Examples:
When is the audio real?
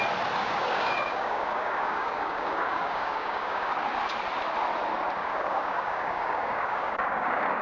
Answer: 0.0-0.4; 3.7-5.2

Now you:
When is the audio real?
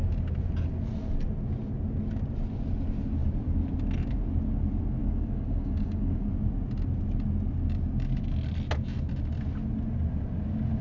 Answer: 0.0-5.0; 6.3-10.8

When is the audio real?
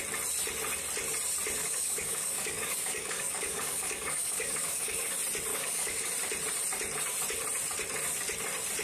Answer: 0.0-1.6; 5.1-5.5; 6.1-8.8